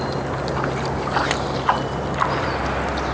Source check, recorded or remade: recorded